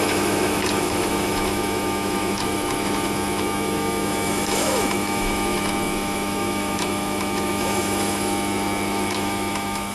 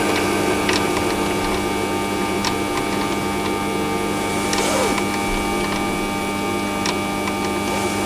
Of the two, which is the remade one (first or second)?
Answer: first